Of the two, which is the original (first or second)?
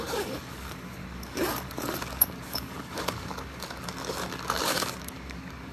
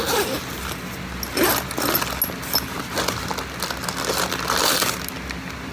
second